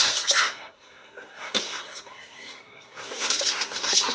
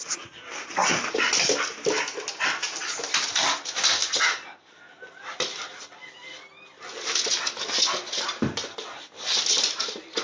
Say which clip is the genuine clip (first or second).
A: second